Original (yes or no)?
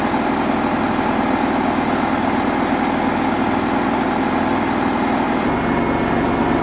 yes